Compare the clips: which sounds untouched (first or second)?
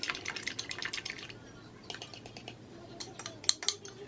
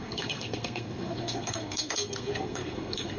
first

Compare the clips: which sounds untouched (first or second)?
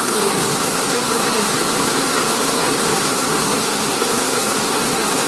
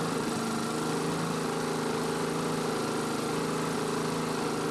second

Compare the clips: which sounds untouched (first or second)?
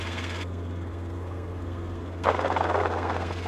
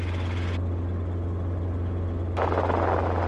second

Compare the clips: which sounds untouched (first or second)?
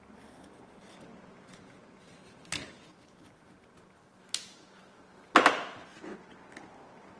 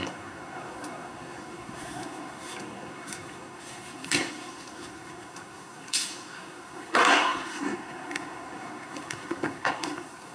first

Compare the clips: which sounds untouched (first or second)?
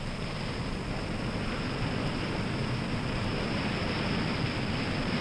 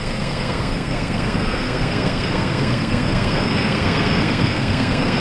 first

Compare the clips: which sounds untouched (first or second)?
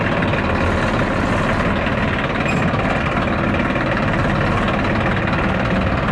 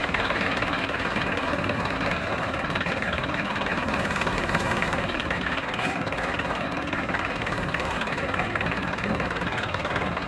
first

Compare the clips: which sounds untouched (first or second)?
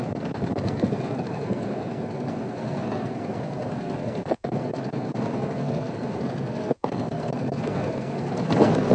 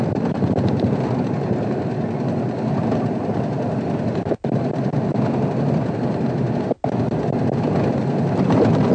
second